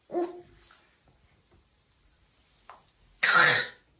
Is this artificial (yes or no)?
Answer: no